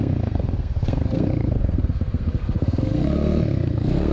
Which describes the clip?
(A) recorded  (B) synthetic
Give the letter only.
B